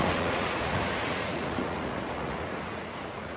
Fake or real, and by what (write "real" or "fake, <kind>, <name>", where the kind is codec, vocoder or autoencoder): fake, vocoder, Vocos